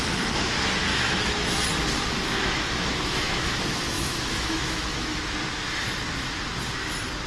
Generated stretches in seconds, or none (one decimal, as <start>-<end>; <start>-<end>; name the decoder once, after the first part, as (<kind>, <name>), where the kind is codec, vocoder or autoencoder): 0.9-1.6 (autoencoder, DAC-VAE); 2.4-5.2